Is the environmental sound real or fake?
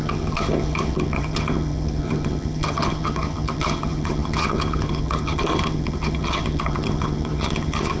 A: fake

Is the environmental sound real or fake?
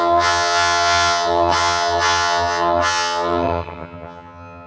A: fake